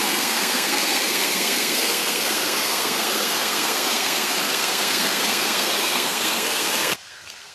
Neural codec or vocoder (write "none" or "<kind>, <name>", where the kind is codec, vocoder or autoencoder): codec, SNAC